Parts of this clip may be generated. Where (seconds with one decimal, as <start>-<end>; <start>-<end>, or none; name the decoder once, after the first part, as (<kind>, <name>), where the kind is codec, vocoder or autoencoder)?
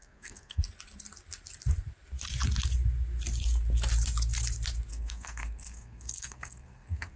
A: 0.0-0.6 (codec, SNAC); 4.9-7.2